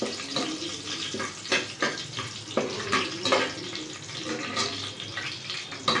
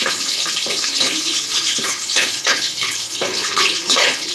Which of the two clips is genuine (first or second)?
first